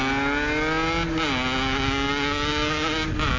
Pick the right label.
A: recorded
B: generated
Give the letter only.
A